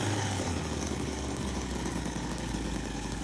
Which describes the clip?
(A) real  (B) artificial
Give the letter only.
B